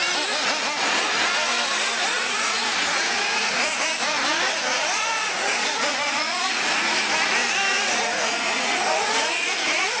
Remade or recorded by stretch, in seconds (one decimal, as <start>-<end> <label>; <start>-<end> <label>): 0.0-2.0 recorded; 2.0-3.8 remade; 3.8-4.3 recorded; 4.3-6.7 remade; 6.7-7.7 recorded; 7.7-10.0 remade